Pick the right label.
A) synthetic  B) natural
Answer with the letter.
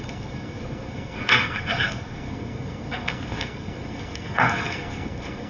A